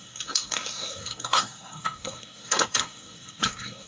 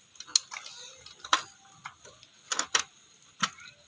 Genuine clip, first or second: second